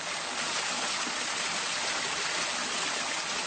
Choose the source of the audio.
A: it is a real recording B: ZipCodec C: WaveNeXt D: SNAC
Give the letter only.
A